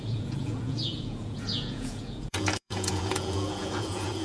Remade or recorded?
remade